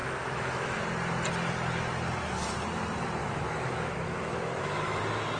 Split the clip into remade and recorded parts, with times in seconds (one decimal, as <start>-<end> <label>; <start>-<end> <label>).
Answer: 0.0-0.8 remade; 0.8-3.2 recorded; 3.2-5.0 remade; 5.0-5.4 recorded